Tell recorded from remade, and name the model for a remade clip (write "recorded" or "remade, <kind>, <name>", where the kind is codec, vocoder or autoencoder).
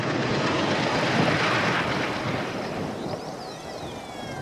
recorded